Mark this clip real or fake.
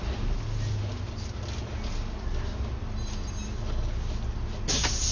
real